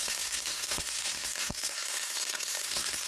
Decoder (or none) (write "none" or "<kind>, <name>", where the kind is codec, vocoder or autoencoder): codec, SNAC